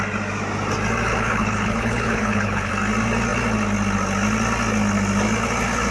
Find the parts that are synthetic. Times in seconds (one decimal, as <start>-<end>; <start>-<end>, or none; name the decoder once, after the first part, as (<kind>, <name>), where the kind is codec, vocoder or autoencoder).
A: 1.1-2.7 (codec, HILCodec)